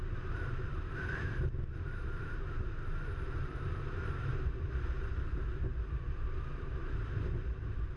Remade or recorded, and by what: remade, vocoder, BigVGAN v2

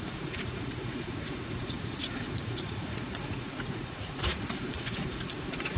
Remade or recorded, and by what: remade, vocoder, Vocos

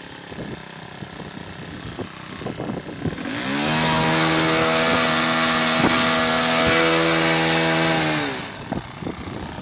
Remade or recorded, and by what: recorded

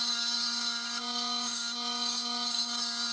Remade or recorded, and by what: remade, codec, DAC